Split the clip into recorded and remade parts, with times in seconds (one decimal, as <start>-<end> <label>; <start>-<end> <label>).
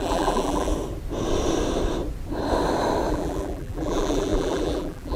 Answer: 0.0-0.7 remade; 0.7-3.1 recorded; 3.1-5.2 remade